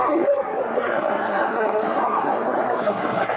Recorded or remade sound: remade